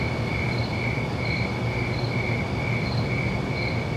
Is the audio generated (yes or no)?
no